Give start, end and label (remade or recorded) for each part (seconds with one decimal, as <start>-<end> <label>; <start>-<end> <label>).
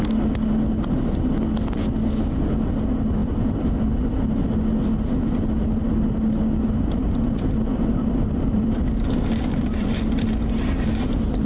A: 0.0-3.2 recorded; 3.2-4.4 remade; 4.4-7.7 recorded; 7.7-10.0 remade; 10.0-11.4 recorded